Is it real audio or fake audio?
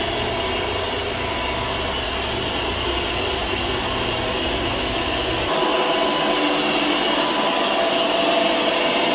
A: real